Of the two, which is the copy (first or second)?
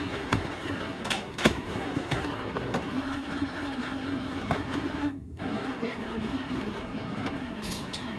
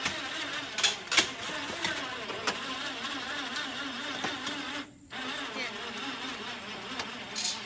first